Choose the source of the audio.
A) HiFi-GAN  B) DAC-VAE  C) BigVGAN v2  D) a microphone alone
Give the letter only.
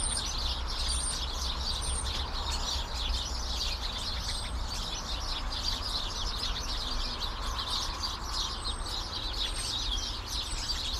D